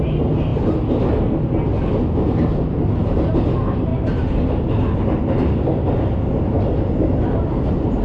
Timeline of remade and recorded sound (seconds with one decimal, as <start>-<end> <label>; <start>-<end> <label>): 0.0-8.0 recorded